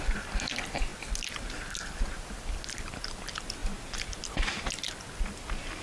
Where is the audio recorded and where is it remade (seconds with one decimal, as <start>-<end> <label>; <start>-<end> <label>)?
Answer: 0.0-5.8 recorded